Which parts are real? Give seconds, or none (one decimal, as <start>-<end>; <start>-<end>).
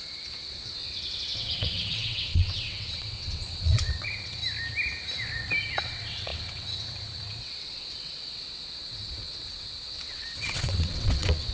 4.4-5.8